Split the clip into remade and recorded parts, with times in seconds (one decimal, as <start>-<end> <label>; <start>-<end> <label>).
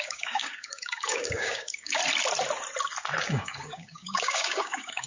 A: 0.0-2.0 remade; 2.0-3.2 recorded; 3.2-5.1 remade